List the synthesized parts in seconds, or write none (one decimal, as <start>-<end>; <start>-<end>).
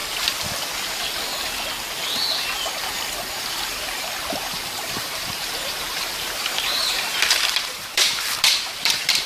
3.4-9.3